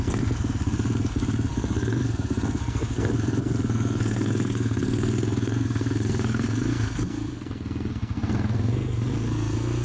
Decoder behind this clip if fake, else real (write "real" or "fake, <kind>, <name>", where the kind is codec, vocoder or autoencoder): fake, codec, SNAC